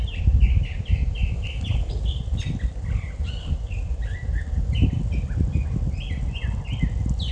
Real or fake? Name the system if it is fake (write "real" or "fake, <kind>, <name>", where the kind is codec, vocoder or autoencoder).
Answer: real